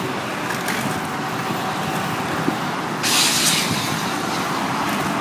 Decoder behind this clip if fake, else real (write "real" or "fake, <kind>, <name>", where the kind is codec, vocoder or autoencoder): real